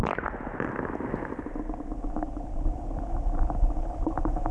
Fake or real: real